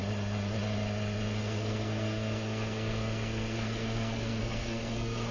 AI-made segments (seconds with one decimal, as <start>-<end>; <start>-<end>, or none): 1.4-5.3